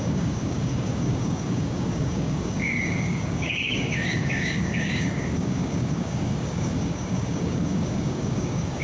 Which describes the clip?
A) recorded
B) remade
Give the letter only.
B